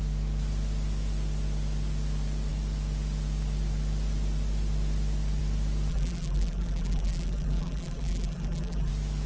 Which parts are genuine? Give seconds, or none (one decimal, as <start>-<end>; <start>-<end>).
0.0-5.9; 8.9-9.3